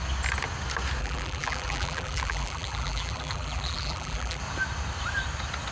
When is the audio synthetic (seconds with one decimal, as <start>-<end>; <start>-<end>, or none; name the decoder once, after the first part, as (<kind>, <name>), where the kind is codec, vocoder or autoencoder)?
1.0-4.4 (vocoder, BigVGAN v2)